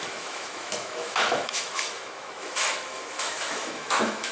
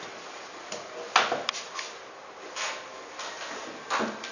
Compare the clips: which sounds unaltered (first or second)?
second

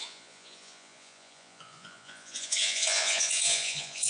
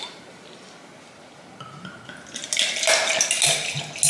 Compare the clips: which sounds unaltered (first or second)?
second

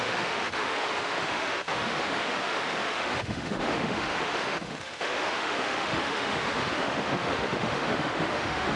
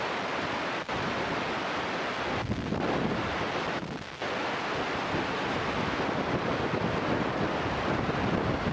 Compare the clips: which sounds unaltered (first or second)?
second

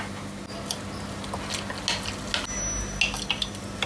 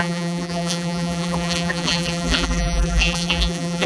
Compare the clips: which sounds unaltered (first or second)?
first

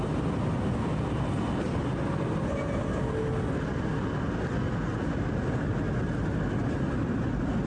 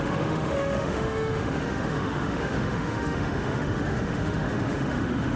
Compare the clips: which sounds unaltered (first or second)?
first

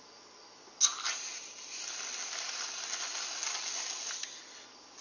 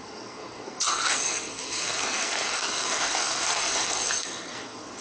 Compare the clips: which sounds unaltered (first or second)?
first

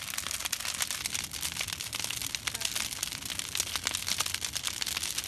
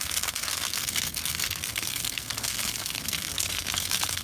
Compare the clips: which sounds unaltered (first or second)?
first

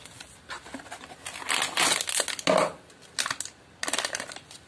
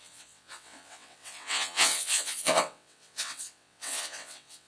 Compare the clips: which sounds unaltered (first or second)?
first